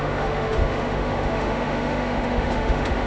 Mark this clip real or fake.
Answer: fake